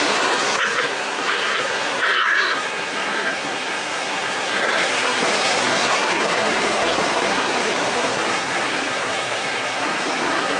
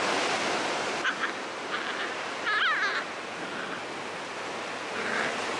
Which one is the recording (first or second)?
second